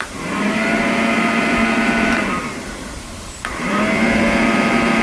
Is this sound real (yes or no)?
no